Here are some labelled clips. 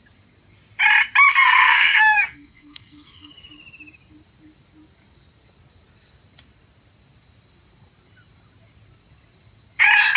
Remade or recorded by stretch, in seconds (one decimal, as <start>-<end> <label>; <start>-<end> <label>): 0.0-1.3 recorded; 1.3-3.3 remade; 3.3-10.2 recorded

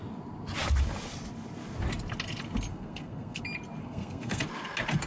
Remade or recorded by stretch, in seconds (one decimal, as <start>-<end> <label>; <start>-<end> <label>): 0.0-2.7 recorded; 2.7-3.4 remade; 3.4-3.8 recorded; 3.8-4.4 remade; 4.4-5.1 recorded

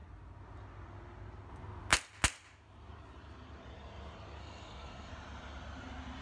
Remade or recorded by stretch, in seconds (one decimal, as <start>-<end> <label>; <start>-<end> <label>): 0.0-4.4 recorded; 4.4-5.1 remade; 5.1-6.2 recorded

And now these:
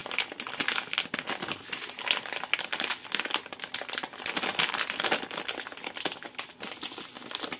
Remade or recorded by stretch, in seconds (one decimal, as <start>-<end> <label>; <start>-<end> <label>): 0.0-7.6 recorded

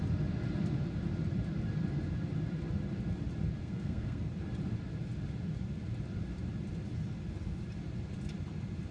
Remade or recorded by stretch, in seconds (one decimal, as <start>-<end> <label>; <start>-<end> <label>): 0.0-3.6 recorded; 3.6-4.3 remade; 4.3-8.9 recorded

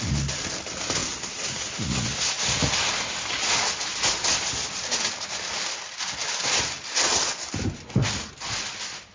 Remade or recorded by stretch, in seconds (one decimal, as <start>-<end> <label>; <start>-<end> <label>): 0.0-9.1 recorded

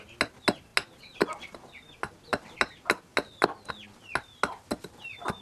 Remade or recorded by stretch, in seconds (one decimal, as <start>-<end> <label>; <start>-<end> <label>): 0.0-5.4 recorded

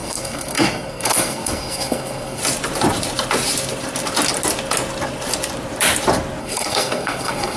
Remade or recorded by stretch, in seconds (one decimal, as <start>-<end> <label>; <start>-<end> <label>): 0.0-2.4 remade; 2.4-6.4 recorded; 6.4-7.6 remade